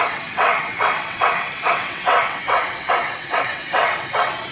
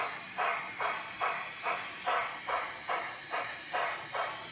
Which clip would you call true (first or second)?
second